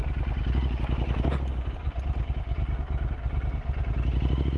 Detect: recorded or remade recorded